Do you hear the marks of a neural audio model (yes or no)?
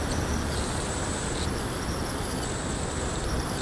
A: no